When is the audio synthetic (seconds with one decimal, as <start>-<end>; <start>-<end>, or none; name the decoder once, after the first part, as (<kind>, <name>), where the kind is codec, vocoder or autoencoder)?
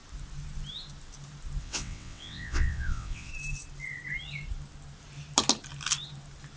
1.6-3.3 (vocoder, WaveNeXt)